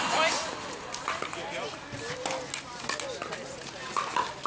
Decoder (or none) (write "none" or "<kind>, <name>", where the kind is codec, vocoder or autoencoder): none